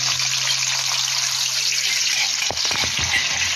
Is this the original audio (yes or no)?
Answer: yes